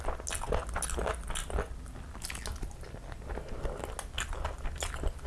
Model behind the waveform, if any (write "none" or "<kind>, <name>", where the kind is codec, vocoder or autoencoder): none